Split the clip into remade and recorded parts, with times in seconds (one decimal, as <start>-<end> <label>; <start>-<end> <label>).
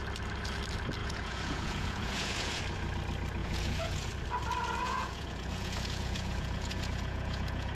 0.0-1.0 recorded; 1.0-2.6 remade; 2.6-3.4 recorded; 3.4-4.1 remade; 4.1-4.8 recorded; 4.8-7.7 remade